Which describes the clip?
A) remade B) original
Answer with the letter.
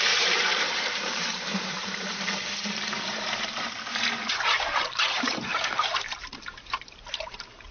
A